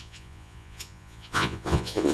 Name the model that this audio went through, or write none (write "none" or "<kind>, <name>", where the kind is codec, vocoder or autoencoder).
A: vocoder, Vocos